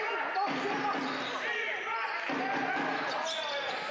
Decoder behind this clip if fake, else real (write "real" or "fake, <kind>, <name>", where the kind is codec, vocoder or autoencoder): real